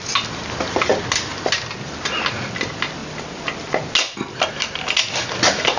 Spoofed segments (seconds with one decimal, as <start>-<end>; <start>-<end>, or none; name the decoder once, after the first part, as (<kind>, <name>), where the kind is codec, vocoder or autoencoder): none